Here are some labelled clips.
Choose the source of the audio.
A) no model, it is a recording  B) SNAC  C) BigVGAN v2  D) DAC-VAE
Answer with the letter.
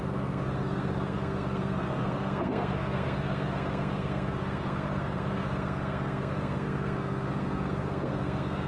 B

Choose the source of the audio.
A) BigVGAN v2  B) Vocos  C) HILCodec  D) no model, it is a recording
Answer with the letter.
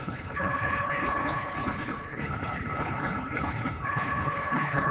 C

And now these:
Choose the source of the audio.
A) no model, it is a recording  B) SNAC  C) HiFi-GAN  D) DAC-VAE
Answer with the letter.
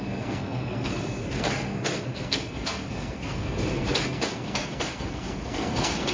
B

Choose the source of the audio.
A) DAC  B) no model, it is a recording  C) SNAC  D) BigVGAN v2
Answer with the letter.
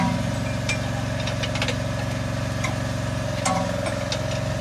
B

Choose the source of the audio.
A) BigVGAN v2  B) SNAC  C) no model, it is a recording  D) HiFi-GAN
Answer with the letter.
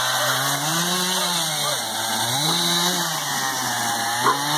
C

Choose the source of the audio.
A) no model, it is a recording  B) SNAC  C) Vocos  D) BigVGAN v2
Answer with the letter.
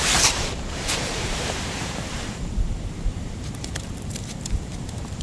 D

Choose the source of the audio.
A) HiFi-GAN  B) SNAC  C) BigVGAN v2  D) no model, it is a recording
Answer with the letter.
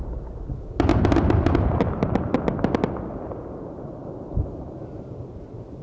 D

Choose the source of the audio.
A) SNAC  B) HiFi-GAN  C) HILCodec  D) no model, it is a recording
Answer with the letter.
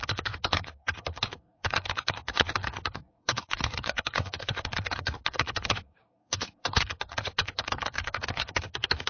A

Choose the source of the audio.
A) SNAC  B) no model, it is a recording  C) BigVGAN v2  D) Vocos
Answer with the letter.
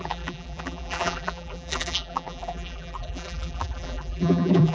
C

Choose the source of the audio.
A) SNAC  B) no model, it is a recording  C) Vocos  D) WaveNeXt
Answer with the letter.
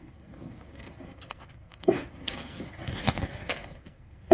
A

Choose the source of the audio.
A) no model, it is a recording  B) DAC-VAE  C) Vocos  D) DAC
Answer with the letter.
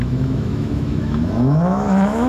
B